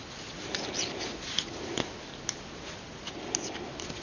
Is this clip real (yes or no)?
yes